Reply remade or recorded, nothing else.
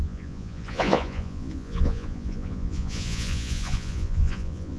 remade